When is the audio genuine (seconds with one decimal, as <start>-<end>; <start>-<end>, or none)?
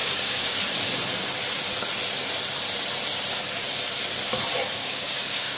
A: 0.5-4.8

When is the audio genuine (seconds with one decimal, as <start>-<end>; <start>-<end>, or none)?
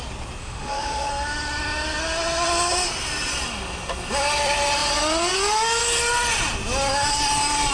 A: 0.0-0.4; 1.1-7.7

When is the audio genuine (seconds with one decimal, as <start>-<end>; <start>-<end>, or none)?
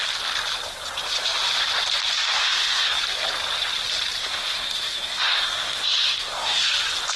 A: 0.0-2.4; 3.0-4.2; 6.7-7.2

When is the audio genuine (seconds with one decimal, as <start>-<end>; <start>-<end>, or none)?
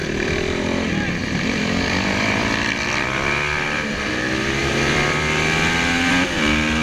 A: 4.1-4.6; 6.1-6.8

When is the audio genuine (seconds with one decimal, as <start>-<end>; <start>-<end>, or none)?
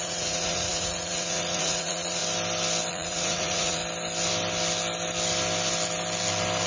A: 2.2-2.9; 3.8-6.7